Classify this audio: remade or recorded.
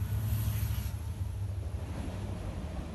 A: recorded